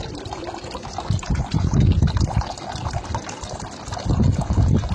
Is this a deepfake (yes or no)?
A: no